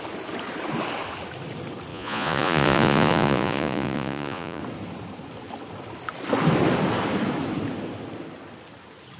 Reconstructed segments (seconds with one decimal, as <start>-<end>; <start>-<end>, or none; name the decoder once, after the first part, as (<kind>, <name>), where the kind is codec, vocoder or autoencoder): 1.9-4.6 (vocoder, Vocos)